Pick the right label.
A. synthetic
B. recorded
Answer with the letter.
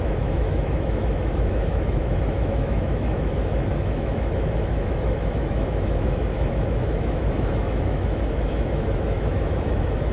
A